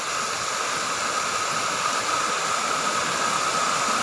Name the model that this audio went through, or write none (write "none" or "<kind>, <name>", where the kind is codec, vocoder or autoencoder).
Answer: none